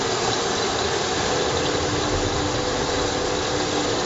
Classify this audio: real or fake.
real